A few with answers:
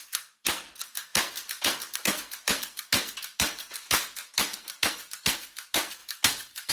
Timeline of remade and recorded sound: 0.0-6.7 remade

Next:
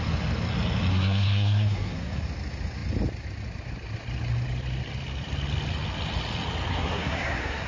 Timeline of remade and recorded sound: 0.0-0.9 recorded; 0.9-2.2 remade; 2.2-6.7 recorded; 6.7-7.7 remade

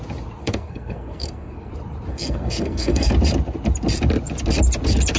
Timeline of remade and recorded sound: 0.0-0.4 recorded; 0.4-1.7 remade; 1.7-2.1 recorded; 2.1-3.1 remade; 3.1-5.2 recorded

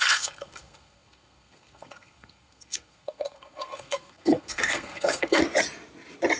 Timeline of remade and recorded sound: 0.0-5.4 remade; 5.4-6.4 recorded

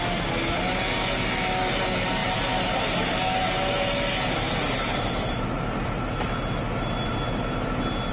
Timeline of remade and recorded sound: 0.0-8.1 recorded

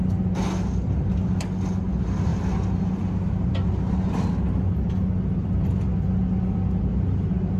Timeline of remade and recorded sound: 0.0-7.6 recorded

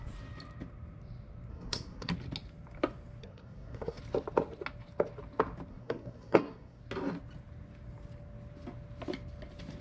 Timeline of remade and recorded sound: 0.0-1.5 recorded; 1.5-2.1 remade; 2.1-3.2 recorded; 3.2-4.0 remade; 4.0-5.7 recorded; 5.7-6.8 remade; 6.8-9.8 recorded

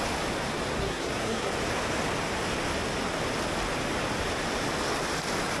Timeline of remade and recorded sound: 0.0-0.8 recorded; 0.8-1.5 remade; 1.5-5.6 recorded